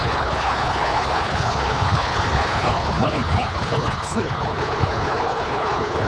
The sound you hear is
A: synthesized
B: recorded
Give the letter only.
A